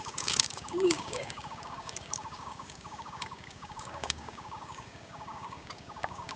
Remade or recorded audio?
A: remade